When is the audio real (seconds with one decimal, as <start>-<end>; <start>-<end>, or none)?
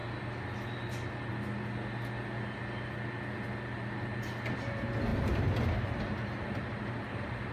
0.0-5.1; 6.0-7.5